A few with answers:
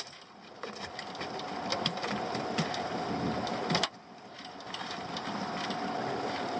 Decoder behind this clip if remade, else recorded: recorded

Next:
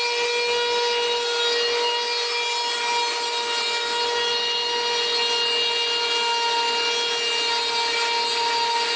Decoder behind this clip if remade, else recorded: recorded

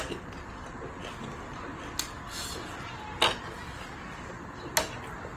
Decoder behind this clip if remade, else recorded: recorded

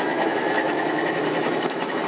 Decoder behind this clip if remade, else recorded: remade, autoencoder, DAC-VAE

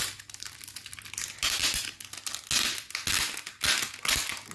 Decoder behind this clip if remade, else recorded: recorded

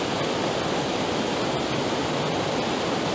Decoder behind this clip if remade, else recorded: recorded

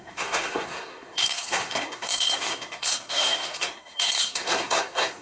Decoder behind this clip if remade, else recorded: remade, codec, SNAC